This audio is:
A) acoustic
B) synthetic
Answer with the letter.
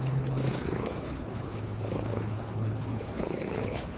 B